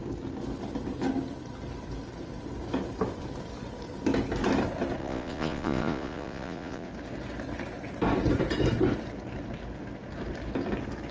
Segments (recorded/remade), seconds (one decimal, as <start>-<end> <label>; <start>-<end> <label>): 0.0-5.0 recorded; 5.0-6.9 remade; 6.9-11.1 recorded